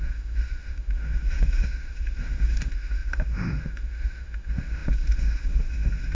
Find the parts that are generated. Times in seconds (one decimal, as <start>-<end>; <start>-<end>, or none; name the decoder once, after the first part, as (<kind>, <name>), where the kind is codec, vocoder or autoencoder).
0.0-6.1 (autoencoder, DAC-VAE)